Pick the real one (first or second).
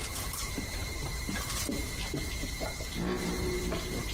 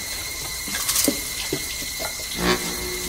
second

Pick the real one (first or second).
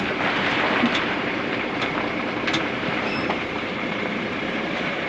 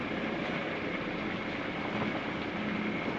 second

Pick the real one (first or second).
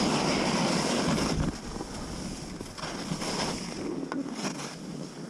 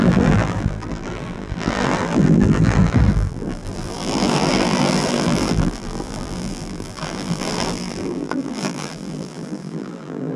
first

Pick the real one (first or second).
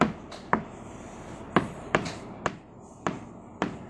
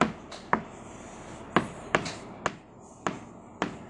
second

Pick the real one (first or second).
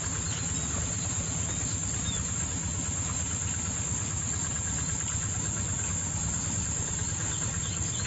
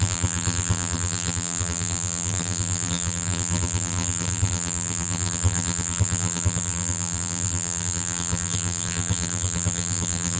first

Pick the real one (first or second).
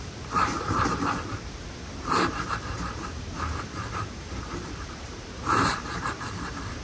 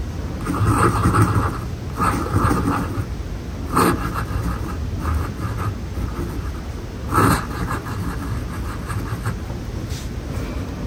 second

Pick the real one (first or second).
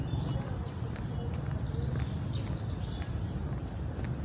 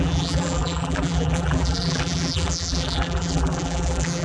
first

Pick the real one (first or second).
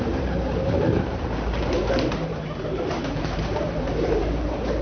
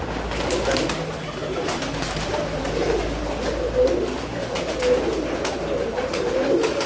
second